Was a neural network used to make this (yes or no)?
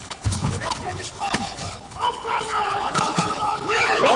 yes